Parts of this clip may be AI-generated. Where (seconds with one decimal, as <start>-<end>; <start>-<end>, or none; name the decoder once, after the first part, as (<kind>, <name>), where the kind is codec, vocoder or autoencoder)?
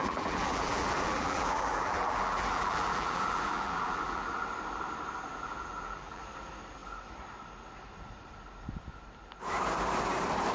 0.0-4.4 (vocoder, BigVGAN v2); 5.3-6.2